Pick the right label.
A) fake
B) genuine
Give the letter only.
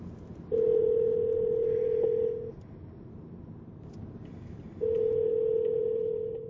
A